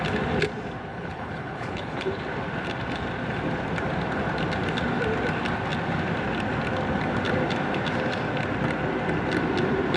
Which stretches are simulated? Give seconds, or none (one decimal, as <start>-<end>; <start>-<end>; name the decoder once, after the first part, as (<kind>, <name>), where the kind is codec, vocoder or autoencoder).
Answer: 0.9-2.1 (codec, HILCodec)

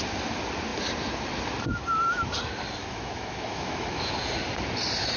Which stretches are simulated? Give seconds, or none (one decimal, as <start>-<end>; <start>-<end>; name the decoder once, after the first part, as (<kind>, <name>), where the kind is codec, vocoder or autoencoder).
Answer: 2.8-4.1 (autoencoder, DAC-VAE)

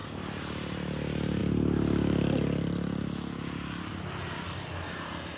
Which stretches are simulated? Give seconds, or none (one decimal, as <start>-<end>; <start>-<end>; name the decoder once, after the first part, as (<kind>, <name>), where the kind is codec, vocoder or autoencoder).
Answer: none

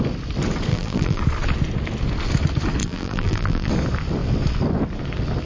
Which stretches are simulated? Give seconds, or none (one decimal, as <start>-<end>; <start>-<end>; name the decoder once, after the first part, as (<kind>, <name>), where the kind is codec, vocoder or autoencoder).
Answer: 0.7-1.2 (vocoder, BigVGAN v2); 2.8-3.7

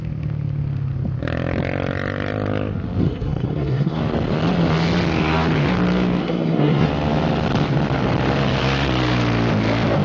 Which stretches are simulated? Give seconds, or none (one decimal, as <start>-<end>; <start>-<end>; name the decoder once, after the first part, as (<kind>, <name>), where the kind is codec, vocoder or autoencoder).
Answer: 3.0-4.0 (codec, SNAC); 6.2-6.9

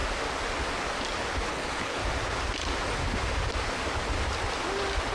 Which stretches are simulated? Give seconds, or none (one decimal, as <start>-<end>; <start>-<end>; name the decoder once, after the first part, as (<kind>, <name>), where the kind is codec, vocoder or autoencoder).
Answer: 1.5-2.0 (codec, HILCodec)

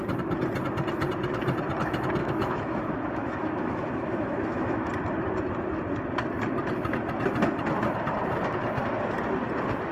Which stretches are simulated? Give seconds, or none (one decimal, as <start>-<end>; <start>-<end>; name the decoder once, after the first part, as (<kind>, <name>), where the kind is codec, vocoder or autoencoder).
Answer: 2.2-4.9 (autoencoder, DAC-VAE)

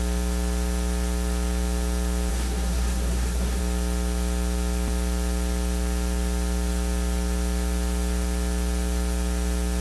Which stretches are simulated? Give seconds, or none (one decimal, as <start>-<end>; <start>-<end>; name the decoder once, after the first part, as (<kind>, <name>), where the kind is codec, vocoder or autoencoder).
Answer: 2.3-3.6 (codec, SNAC)